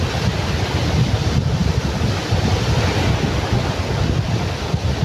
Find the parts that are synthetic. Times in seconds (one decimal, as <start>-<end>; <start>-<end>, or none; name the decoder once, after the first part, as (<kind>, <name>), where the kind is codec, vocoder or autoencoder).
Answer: none